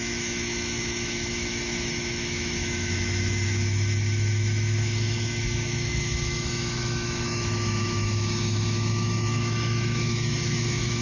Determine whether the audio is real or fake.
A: fake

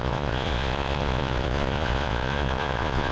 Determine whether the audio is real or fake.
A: fake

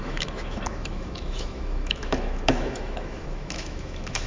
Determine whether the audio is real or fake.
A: fake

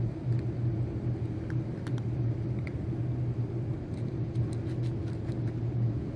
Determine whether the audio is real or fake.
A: real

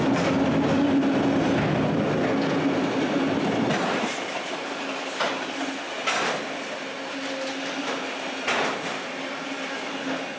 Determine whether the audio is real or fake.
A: real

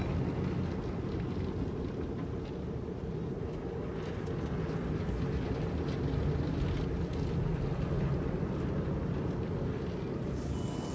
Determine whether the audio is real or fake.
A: real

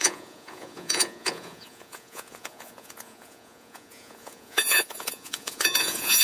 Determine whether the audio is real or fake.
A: fake